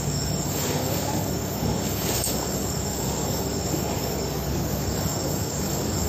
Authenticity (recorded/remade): remade